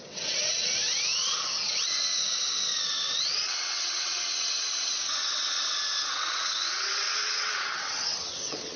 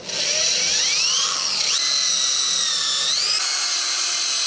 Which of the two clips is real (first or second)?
second